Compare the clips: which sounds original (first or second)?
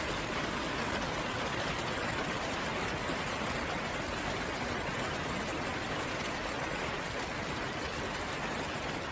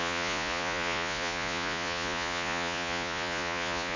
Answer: first